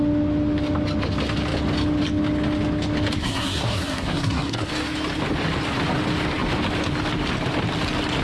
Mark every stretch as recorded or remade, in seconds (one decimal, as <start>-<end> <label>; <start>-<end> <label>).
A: 0.0-3.2 recorded; 3.2-4.7 remade; 4.7-8.2 recorded